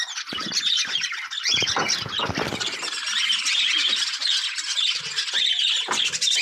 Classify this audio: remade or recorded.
recorded